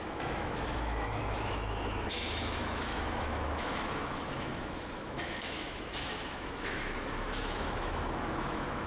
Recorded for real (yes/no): no